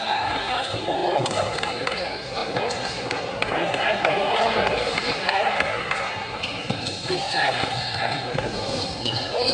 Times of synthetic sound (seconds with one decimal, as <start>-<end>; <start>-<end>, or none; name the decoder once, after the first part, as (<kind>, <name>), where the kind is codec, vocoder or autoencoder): 0.0-9.5 (codec, SNAC)